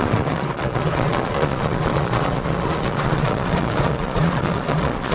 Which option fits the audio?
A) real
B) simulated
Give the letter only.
B